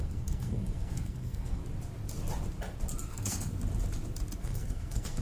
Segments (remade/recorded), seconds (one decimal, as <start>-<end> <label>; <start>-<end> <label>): 0.0-1.6 remade; 1.6-3.1 recorded; 3.1-3.5 remade; 3.5-4.4 recorded; 4.4-5.2 remade